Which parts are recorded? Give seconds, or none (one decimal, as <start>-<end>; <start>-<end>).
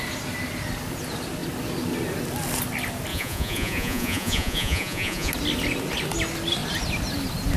0.0-3.1; 5.3-7.6